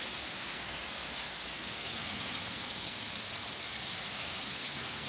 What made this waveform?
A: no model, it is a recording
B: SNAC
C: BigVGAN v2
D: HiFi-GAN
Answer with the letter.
B